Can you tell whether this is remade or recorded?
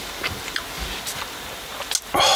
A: recorded